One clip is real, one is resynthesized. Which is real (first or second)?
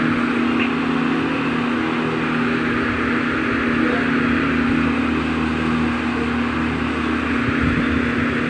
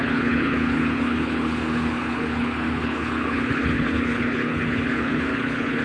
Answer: first